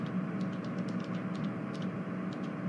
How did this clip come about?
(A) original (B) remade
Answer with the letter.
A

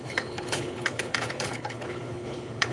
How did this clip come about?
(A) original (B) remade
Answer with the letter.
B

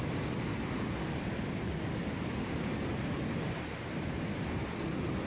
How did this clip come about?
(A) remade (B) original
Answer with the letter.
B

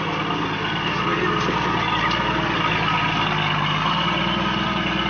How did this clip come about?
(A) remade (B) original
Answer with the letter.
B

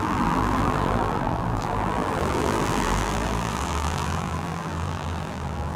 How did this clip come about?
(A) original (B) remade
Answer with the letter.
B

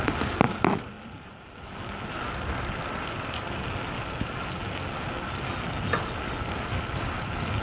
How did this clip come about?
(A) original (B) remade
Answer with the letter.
A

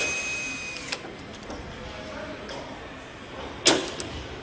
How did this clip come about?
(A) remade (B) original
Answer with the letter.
B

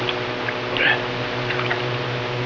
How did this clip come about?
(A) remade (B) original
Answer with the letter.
B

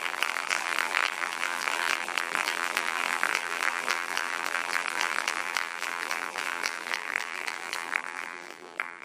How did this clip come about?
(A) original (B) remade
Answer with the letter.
B